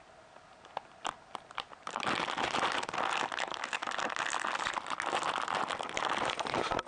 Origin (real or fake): real